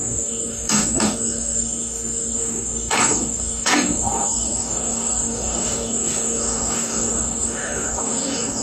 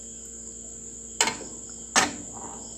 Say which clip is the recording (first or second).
second